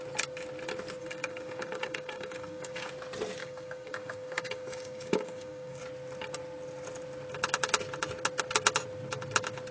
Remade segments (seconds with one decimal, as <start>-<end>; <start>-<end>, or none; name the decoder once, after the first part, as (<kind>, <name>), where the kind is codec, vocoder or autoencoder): 1.0-2.9 (codec, DAC); 3.4-5.8